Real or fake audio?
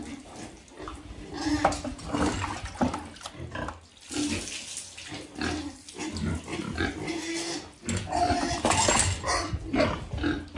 real